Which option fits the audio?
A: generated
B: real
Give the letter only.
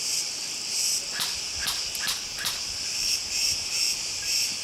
A